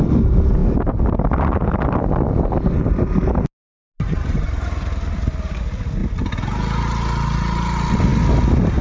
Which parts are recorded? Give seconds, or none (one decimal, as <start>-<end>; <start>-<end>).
0.0-8.8